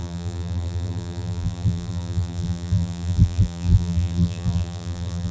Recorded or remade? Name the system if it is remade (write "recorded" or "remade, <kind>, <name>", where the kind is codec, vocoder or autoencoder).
remade, vocoder, BigVGAN v2